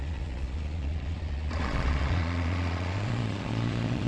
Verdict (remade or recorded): remade